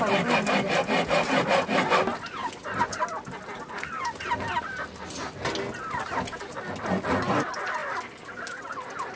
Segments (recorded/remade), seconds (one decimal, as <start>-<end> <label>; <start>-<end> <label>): 0.0-9.2 recorded